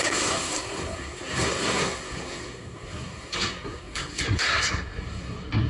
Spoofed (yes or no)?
yes